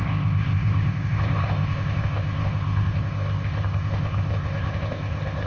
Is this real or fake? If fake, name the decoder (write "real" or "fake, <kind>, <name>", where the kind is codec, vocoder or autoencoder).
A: fake, codec, ZipCodec